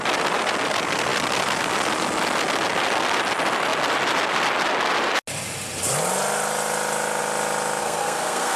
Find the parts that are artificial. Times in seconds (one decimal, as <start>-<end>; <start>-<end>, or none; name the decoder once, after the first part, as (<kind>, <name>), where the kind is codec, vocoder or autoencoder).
7.8-8.6 (codec, SNAC)